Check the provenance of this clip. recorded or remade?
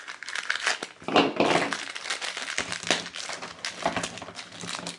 recorded